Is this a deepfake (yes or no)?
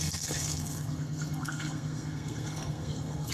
yes